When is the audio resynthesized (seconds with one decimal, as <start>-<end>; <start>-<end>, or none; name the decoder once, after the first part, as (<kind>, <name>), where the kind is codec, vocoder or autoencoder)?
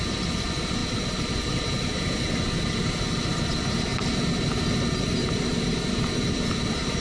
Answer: none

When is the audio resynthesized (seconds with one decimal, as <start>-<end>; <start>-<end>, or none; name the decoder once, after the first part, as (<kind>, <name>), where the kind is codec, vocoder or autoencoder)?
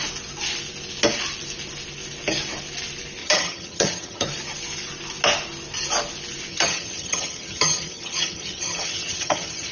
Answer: 3.2-4.2 (vocoder, HiFi-GAN); 6.5-9.7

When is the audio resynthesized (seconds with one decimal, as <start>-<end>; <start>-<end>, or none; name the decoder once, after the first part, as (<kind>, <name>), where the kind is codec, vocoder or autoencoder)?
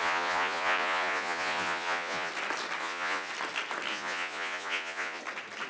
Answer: 0.0-2.3 (vocoder, Vocos); 2.8-3.3; 3.9-5.2